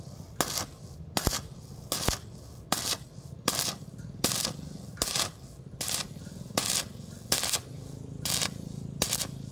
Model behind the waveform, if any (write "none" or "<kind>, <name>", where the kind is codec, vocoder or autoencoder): none